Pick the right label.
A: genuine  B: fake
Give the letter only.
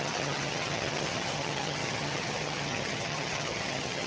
B